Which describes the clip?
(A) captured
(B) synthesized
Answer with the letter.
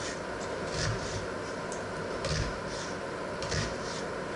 A